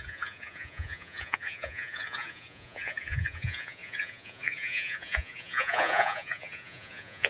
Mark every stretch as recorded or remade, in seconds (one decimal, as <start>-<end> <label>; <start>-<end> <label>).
0.0-7.3 remade